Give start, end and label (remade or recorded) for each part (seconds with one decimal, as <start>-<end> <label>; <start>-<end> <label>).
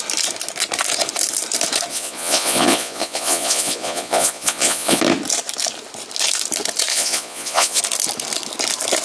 0.0-1.9 recorded; 1.9-5.0 remade; 5.0-6.9 recorded; 6.9-7.8 remade; 7.8-9.0 recorded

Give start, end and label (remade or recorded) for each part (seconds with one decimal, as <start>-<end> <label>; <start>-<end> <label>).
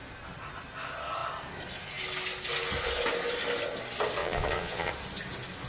0.0-4.2 recorded; 4.2-4.9 remade; 4.9-5.7 recorded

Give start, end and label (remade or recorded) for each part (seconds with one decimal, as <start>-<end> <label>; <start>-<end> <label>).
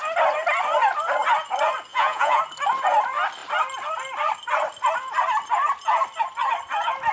0.0-1.9 recorded; 1.9-2.4 remade; 2.4-7.1 recorded